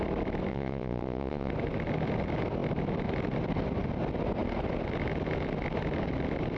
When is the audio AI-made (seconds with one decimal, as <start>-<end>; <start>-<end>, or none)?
0.5-1.5